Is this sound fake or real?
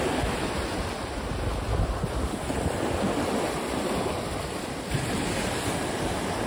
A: real